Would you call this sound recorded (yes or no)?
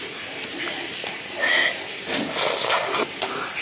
yes